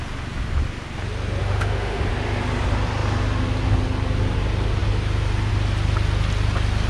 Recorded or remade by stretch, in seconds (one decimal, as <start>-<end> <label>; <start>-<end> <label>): 0.0-1.4 recorded; 1.4-2.0 remade; 2.0-6.9 recorded